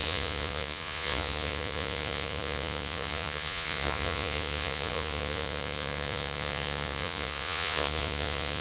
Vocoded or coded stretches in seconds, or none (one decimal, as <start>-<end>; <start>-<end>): 0.0-8.6